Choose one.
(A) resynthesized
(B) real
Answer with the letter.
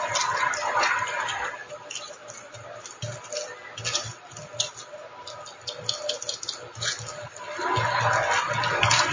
B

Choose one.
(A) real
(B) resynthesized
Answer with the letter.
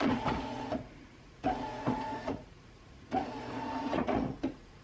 B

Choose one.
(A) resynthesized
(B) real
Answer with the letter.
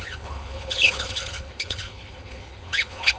A